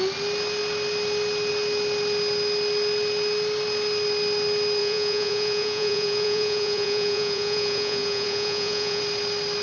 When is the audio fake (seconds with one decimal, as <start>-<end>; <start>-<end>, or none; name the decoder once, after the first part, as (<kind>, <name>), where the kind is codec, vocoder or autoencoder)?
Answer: 4.8-9.0 (vocoder, Vocos)